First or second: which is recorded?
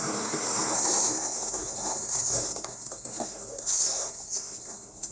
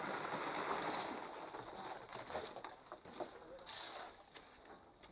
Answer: second